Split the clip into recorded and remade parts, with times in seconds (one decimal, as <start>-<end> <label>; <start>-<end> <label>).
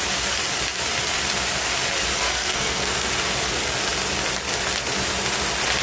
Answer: 0.0-2.2 recorded; 2.2-3.1 remade; 3.1-5.8 recorded